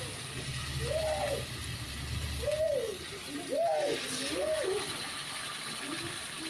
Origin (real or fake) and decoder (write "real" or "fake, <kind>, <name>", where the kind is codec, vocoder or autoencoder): real